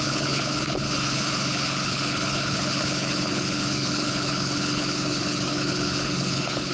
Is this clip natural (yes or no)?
no